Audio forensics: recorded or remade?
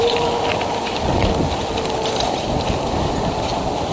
remade